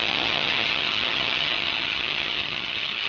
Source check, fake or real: fake